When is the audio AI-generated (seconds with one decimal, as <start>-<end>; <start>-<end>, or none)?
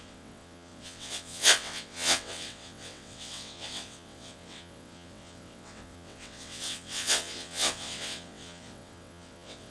0.0-9.7